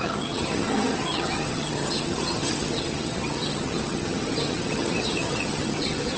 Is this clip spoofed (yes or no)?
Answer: yes